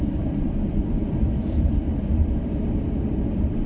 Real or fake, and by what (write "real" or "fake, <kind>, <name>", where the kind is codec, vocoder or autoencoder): fake, vocoder, BigVGAN v2